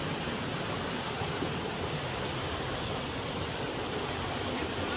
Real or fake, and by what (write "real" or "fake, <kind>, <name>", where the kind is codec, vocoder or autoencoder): fake, vocoder, BigVGAN v2